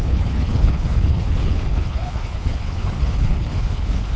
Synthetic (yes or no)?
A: yes